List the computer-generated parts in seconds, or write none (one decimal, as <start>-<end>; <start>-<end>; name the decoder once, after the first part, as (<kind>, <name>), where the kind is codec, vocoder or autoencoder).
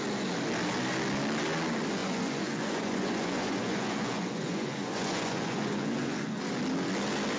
2.0-6.4 (vocoder, Vocos)